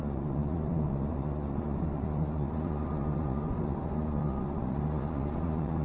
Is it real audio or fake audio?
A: fake